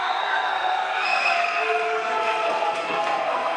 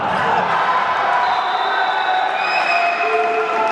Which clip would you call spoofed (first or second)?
first